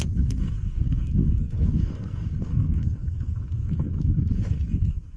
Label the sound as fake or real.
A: fake